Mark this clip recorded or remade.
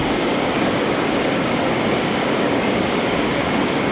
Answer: remade